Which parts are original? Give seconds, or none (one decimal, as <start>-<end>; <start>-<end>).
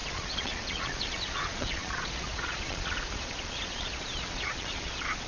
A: none